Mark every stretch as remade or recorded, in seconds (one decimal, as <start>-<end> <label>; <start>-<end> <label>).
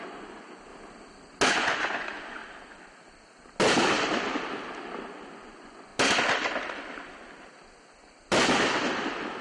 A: 0.0-0.7 remade; 0.7-1.5 recorded; 1.5-2.4 remade; 2.4-5.3 recorded; 5.3-5.9 remade; 5.9-9.4 recorded